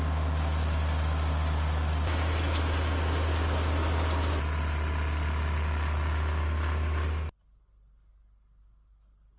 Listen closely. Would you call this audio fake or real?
real